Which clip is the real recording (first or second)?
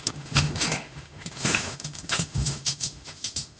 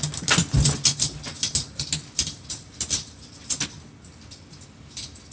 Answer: second